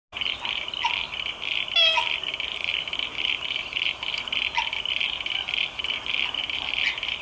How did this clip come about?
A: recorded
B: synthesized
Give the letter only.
A